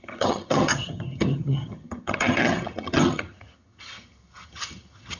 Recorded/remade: remade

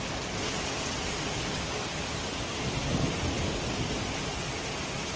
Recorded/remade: recorded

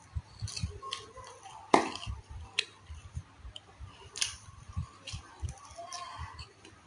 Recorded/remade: remade